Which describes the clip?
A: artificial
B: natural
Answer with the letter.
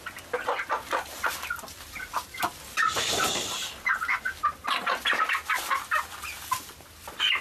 B